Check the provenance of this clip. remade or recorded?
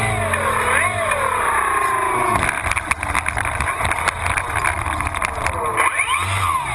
recorded